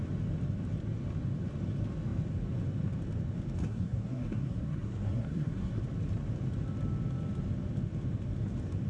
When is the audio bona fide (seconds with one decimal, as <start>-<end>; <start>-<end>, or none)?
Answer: 0.0-3.6; 5.8-8.9